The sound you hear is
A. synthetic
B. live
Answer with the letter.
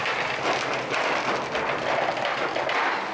B